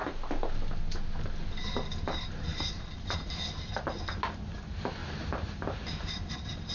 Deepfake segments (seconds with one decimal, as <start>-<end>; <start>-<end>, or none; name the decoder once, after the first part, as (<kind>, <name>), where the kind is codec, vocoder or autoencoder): 5.0-6.7 (vocoder, BigVGAN v2)